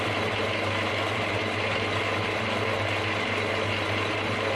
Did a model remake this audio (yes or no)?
no